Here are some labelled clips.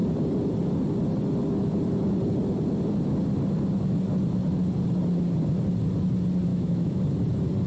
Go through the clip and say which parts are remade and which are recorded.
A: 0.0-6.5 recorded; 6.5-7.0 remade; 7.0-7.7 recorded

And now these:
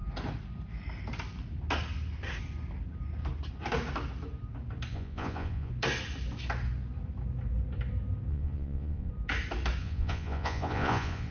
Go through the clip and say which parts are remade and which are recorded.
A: 0.0-4.9 recorded; 4.9-5.7 remade; 5.7-8.3 recorded; 8.3-9.1 remade; 9.1-9.8 recorded; 9.8-11.3 remade

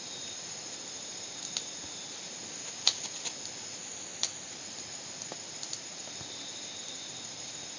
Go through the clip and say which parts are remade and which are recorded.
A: 0.0-7.8 recorded

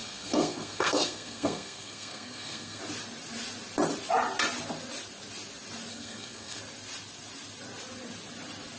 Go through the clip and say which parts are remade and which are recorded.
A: 0.0-2.8 remade; 2.8-5.9 recorded; 5.9-6.6 remade; 6.6-8.8 recorded

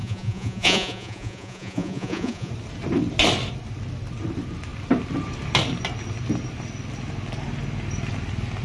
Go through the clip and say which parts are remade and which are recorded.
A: 0.0-2.5 remade; 2.5-8.6 recorded

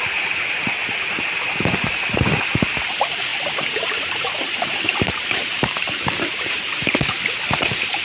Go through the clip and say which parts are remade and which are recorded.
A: 0.0-0.8 recorded; 0.8-1.9 remade; 1.9-3.3 recorded; 3.3-6.9 remade; 6.9-8.0 recorded